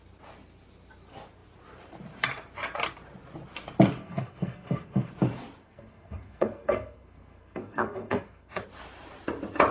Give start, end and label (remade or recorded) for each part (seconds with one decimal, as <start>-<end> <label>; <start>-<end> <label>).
0.0-4.0 recorded; 4.0-5.1 remade; 5.1-5.6 recorded; 5.6-8.6 remade; 8.6-9.7 recorded